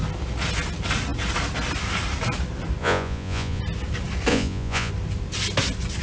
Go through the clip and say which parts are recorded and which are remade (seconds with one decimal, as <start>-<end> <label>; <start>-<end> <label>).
0.0-2.8 recorded; 2.8-3.6 remade; 3.6-4.3 recorded; 4.3-4.9 remade; 4.9-6.0 recorded